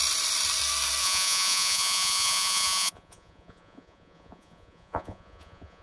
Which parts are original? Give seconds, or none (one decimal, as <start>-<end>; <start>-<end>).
0.0-1.0